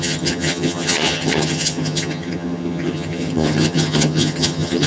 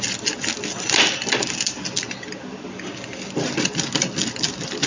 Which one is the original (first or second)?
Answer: second